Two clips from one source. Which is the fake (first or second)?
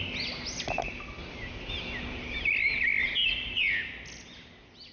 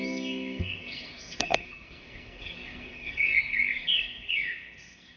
second